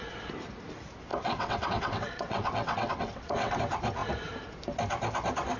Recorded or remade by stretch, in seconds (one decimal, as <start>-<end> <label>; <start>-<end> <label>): 0.0-1.1 recorded; 1.1-3.6 remade; 3.6-5.6 recorded